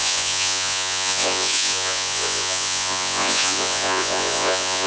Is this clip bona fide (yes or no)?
no